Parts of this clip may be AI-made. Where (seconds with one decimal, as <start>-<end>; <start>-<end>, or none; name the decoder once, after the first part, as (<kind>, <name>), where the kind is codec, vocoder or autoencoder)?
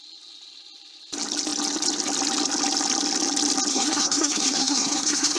3.7-5.4 (codec, SNAC)